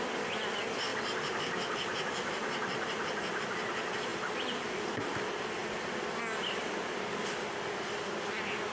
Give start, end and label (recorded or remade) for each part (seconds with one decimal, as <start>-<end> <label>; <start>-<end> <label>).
0.0-8.7 recorded